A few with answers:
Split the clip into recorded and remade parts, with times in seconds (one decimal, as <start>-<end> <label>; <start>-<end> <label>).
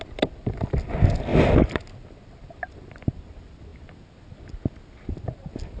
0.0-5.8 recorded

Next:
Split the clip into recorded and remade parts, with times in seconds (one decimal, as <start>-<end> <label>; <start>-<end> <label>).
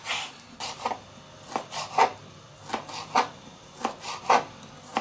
0.0-3.0 recorded; 3.0-5.0 remade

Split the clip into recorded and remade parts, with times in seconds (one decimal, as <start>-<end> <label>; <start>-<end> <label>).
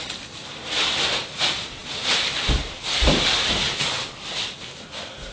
0.0-1.8 recorded; 1.8-3.8 remade; 3.8-5.3 recorded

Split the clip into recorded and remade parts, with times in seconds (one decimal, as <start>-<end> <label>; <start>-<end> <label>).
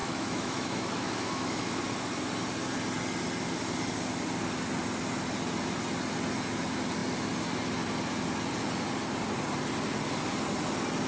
0.0-1.8 remade; 1.8-11.1 recorded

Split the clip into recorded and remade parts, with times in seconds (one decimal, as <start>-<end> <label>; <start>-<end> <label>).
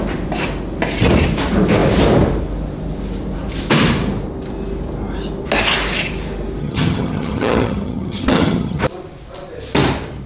0.0-6.6 recorded; 6.6-8.8 remade; 8.8-10.3 recorded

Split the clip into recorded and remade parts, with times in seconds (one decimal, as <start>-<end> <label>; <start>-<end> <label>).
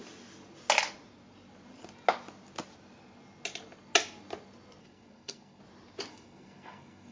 0.0-4.8 recorded; 4.8-5.6 remade; 5.6-6.1 recorded; 6.1-7.1 remade